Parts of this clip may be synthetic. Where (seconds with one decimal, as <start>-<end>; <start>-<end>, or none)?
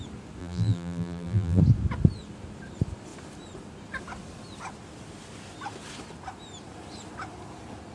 0.4-1.6